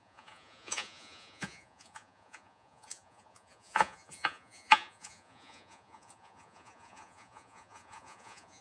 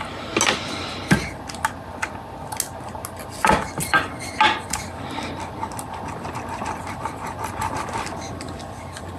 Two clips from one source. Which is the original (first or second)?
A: second